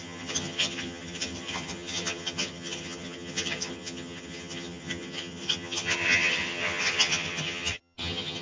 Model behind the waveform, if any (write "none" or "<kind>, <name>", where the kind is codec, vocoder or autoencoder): vocoder, HiFi-GAN